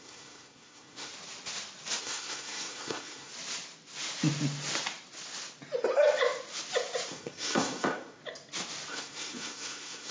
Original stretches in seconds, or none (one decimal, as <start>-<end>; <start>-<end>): 1.1-2.0; 3.3-7.1; 8.2-8.9